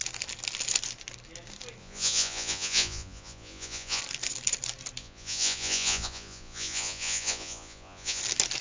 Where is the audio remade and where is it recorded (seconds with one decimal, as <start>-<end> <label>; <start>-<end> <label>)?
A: 0.0-1.8 recorded; 1.8-4.0 remade; 4.0-5.0 recorded; 5.0-8.2 remade; 8.2-8.6 recorded